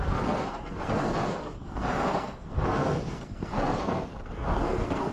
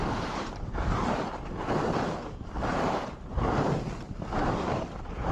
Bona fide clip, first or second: second